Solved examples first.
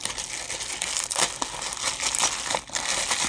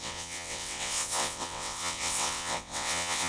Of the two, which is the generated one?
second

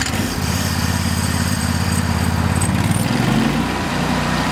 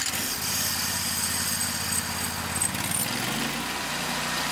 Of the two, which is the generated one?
first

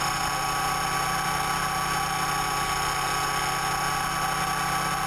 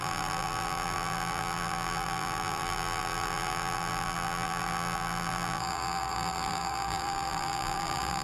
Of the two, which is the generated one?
second